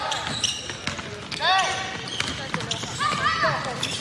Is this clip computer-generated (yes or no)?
no